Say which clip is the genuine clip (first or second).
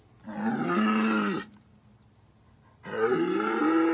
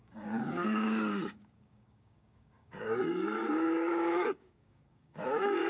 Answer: first